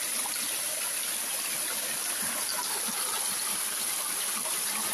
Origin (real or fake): fake